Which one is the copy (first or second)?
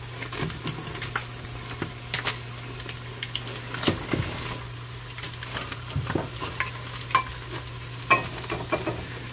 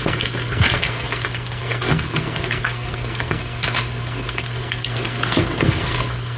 second